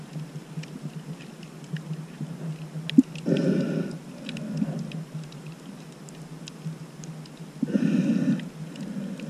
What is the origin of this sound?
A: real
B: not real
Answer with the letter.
A